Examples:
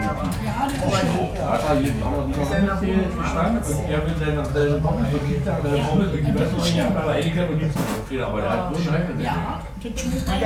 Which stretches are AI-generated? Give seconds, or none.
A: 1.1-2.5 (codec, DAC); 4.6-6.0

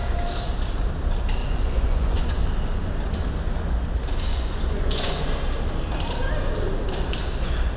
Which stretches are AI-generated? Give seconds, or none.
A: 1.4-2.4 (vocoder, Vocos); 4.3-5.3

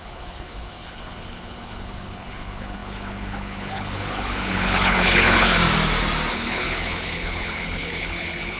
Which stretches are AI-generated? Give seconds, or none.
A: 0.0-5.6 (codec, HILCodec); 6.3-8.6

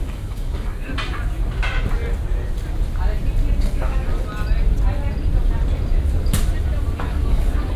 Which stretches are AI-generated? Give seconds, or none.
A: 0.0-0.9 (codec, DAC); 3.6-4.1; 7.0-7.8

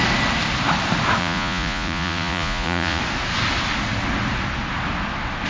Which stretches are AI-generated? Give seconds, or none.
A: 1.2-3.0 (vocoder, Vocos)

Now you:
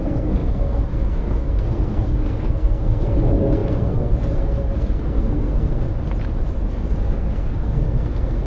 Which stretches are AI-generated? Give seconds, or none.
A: 0.0-5.9 (codec, SNAC); 6.7-8.5

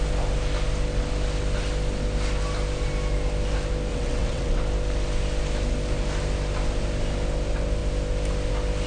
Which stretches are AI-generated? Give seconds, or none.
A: 3.9-4.6 (vocoder, WaveNeXt)